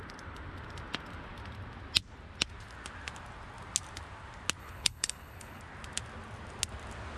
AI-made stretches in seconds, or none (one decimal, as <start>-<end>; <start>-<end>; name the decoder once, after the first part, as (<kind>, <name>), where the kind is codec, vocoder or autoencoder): 4.6-5.6 (codec, HILCodec)